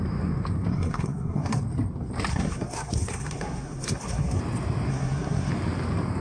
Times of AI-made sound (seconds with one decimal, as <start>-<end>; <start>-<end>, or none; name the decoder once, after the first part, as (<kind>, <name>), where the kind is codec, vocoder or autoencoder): 0.7-1.6 (codec, SNAC); 2.3-4.4; 4.9-5.5